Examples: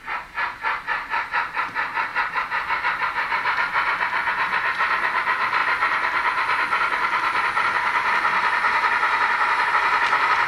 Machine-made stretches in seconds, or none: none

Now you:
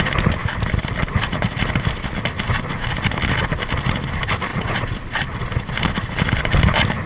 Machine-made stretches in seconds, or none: 4.5-5.0 (vocoder, Vocos)

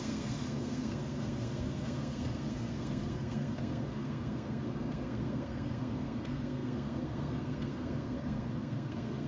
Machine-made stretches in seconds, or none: 0.0-9.3 (codec, SNAC)

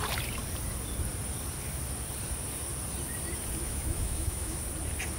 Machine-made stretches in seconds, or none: 3.6-4.6 (autoencoder, DAC-VAE)